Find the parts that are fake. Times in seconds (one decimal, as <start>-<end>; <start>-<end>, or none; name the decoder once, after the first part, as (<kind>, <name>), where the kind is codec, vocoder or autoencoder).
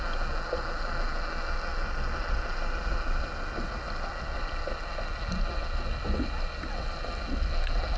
none